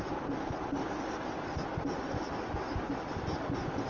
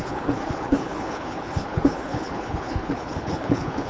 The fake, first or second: second